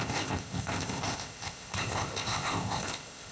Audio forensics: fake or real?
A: fake